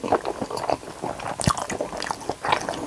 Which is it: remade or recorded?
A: recorded